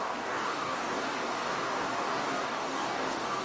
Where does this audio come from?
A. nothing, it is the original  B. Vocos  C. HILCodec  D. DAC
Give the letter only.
D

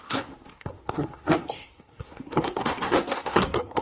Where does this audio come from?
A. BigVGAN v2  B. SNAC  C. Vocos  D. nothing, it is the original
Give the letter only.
B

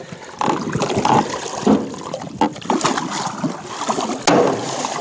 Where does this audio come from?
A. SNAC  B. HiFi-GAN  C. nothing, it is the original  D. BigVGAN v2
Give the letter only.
C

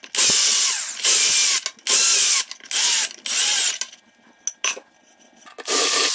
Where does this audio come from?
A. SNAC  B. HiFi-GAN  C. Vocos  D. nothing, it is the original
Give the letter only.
D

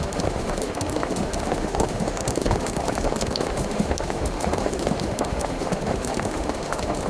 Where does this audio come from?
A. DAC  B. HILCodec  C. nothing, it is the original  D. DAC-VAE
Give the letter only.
D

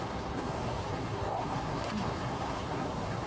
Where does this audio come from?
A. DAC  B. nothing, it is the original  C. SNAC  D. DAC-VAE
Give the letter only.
C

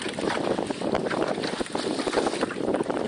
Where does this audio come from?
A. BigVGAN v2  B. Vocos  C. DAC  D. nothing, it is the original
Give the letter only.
D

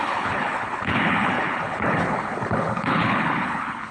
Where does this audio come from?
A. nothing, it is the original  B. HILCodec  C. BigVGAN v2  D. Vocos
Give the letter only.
B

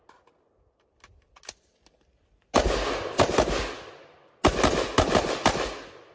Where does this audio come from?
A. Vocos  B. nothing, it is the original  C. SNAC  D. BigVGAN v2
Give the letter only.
B